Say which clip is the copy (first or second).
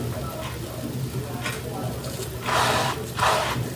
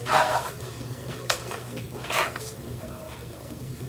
second